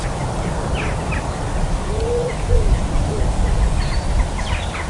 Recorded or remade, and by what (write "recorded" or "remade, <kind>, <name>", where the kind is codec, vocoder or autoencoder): recorded